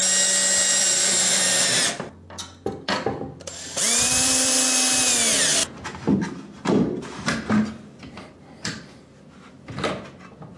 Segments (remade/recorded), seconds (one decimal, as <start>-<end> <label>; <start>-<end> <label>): 0.0-0.8 recorded; 0.8-4.5 remade; 4.5-5.6 recorded; 5.6-9.2 remade; 9.2-10.6 recorded